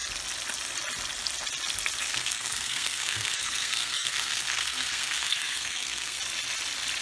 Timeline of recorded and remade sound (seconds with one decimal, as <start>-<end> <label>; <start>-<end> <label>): 0.0-2.1 recorded; 2.1-6.2 remade; 6.2-7.0 recorded